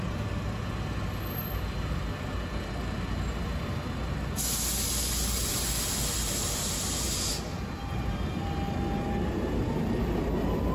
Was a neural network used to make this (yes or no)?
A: no